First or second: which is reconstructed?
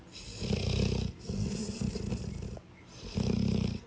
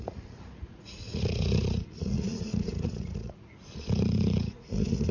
second